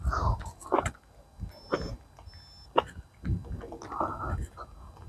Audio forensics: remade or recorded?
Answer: recorded